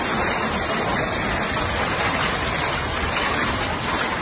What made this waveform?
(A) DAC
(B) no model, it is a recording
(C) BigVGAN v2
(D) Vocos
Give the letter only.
B